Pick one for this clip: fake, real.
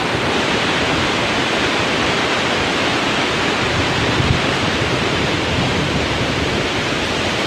fake